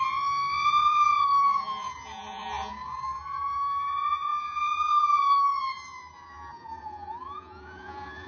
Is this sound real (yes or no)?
no